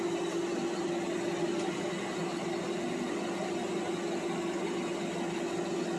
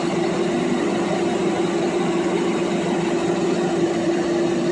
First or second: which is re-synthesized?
second